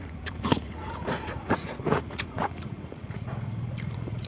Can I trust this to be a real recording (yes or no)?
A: no